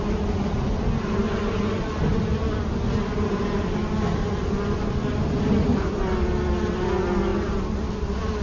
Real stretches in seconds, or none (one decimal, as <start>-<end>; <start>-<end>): 0.0-8.4